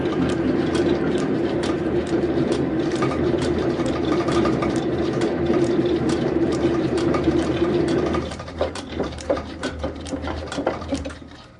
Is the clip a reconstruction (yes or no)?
yes